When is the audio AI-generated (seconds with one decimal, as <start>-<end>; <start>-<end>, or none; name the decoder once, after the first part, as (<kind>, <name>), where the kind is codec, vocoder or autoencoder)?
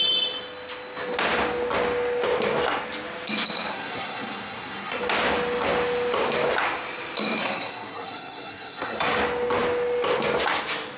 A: 3.7-5.0 (codec, SNAC); 7.4-9.2